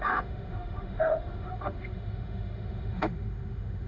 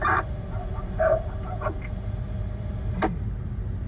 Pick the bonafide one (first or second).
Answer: second